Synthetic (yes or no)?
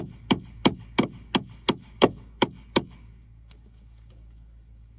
yes